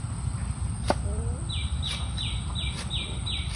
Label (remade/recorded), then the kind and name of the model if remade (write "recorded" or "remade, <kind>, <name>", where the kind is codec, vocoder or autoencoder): recorded